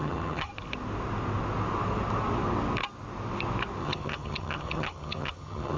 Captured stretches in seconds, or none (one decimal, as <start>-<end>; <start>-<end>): 0.5-3.8

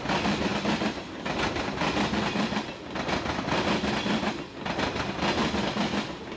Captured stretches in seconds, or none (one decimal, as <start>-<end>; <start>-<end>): 0.0-6.4